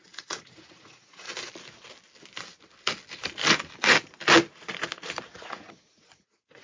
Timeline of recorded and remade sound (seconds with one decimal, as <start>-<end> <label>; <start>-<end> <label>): 0.0-1.3 remade; 1.3-5.3 recorded; 5.3-6.6 remade